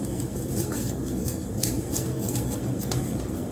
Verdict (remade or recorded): remade